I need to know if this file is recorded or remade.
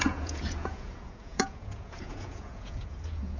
remade